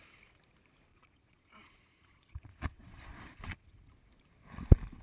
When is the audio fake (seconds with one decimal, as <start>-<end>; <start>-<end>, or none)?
0.9-3.9